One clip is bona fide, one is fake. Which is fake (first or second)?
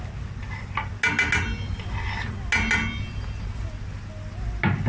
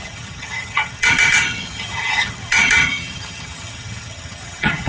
second